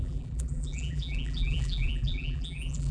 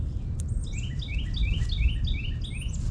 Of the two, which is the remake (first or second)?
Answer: first